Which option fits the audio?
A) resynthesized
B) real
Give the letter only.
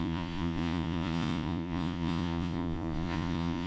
A